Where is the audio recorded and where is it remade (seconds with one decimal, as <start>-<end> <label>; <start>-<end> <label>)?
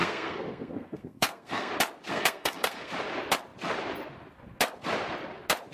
0.0-1.7 remade; 1.7-2.1 recorded; 2.1-2.9 remade; 2.9-5.7 recorded